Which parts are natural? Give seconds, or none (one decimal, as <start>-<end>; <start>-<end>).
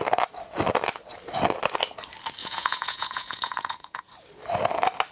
0.0-2.4; 4.0-5.1